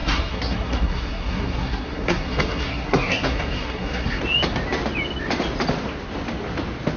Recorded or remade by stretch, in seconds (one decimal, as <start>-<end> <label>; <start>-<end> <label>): 0.0-4.2 remade; 4.2-7.0 recorded